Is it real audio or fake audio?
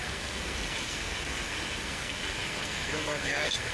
fake